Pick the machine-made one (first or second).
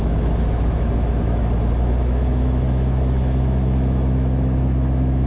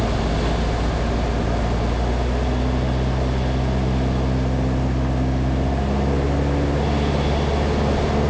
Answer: first